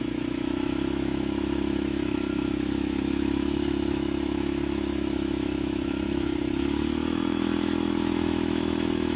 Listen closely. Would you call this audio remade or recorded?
remade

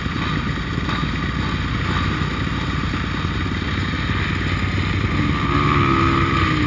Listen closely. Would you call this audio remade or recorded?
recorded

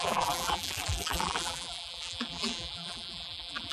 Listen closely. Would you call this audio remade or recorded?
remade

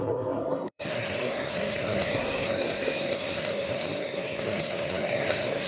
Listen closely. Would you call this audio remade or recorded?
remade